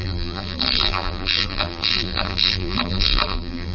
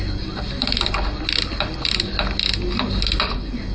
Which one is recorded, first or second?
second